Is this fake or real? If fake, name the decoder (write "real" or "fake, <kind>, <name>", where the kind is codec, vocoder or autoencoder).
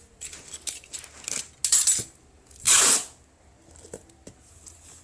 real